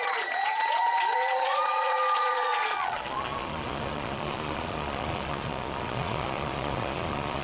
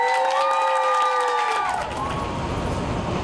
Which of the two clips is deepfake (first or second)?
first